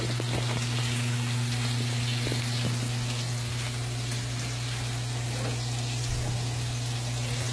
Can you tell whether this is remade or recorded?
recorded